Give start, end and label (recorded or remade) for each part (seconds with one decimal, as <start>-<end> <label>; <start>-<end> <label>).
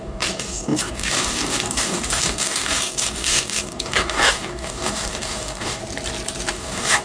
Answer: 0.0-5.8 remade; 5.8-6.5 recorded; 6.5-7.0 remade